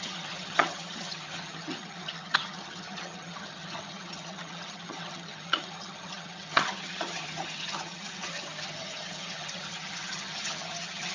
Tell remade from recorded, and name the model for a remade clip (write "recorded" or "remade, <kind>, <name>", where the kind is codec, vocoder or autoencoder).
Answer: remade, vocoder, HiFi-GAN